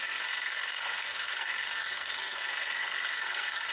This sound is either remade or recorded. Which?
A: remade